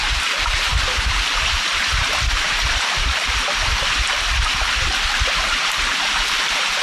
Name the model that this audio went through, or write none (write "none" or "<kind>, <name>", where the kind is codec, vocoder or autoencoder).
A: none